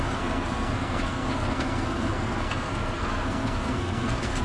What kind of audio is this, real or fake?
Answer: fake